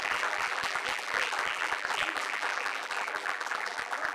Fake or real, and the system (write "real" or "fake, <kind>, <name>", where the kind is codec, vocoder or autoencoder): fake, vocoder, BigVGAN v2